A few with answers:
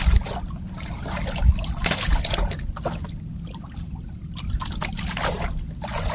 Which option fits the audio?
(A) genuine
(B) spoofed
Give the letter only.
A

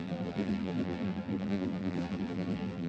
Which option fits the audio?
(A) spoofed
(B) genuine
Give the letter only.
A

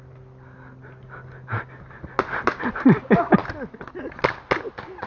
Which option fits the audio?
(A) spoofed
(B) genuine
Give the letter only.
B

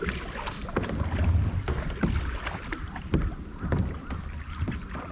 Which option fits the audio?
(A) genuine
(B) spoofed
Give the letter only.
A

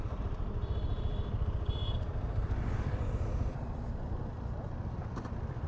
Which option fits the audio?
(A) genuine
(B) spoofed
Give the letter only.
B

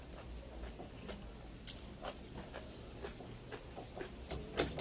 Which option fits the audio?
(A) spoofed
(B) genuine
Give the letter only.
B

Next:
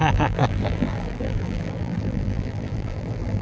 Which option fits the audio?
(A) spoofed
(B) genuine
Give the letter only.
A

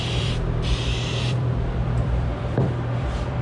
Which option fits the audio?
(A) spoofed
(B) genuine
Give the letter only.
A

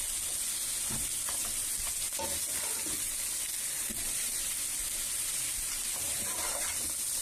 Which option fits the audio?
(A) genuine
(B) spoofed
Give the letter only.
A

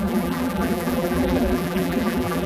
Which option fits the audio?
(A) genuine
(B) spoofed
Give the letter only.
B